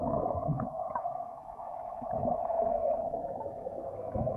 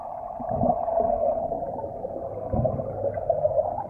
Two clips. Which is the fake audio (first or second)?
first